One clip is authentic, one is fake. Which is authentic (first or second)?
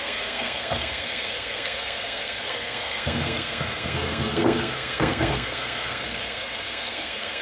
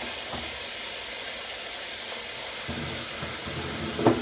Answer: second